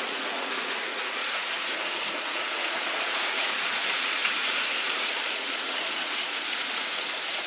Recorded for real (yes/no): no